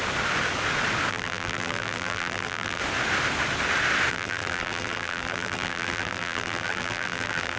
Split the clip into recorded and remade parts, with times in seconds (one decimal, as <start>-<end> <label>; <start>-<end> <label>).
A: 0.0-1.1 recorded; 1.1-2.8 remade; 2.8-4.1 recorded; 4.1-7.6 remade